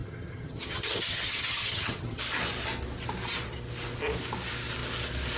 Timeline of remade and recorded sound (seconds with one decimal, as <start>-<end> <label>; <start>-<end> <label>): 0.0-2.2 remade; 2.2-5.4 recorded